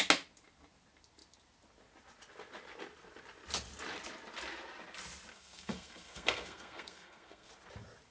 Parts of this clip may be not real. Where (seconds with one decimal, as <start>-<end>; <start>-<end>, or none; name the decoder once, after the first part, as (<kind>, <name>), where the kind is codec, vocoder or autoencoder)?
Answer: 5.3-7.5 (codec, SNAC)